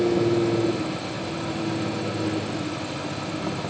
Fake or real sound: real